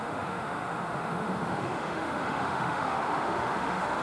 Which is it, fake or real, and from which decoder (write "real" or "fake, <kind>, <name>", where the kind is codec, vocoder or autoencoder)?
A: fake, autoencoder, DAC-VAE